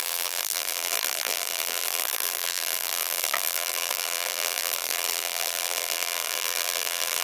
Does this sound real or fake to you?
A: fake